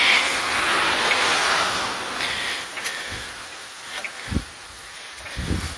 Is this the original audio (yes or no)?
yes